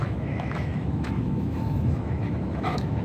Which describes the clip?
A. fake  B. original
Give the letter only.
A